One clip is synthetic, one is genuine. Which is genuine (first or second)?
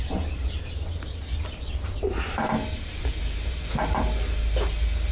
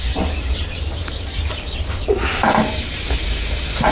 first